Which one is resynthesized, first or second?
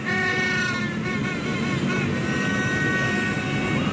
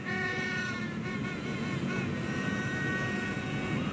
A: second